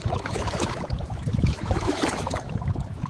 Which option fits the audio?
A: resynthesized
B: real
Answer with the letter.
A